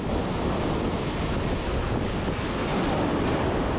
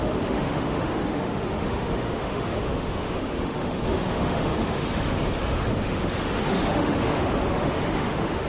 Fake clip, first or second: second